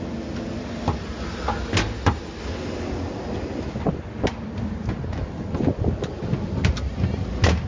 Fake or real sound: real